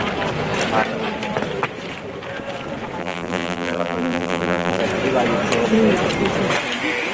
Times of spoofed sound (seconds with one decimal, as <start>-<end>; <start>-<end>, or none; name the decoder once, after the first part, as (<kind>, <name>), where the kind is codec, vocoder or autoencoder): 3.0-4.8 (vocoder, BigVGAN v2)